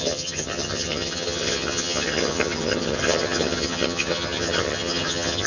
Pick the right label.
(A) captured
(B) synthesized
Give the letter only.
B